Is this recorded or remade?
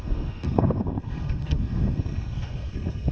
remade